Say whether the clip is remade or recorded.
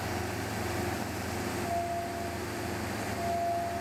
recorded